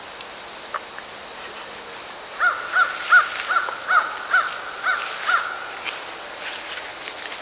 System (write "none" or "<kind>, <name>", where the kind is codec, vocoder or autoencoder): none